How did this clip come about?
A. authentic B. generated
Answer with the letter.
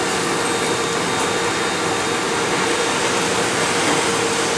A